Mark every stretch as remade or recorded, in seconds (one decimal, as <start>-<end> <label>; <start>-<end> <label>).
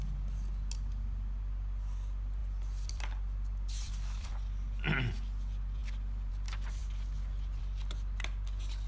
0.0-2.4 recorded; 2.4-4.3 remade; 4.3-8.9 recorded